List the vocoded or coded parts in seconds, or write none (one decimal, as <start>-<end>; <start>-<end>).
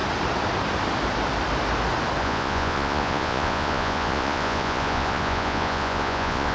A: 2.2-6.5